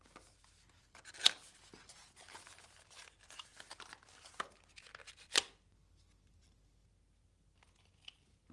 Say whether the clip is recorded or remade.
recorded